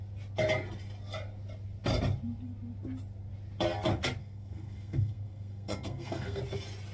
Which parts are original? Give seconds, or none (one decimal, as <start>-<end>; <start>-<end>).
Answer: 0.0-4.2; 6.4-6.9